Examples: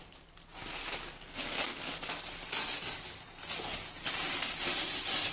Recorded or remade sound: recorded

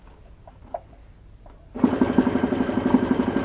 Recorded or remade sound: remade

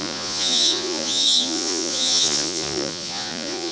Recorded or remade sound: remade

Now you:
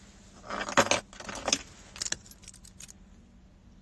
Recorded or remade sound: recorded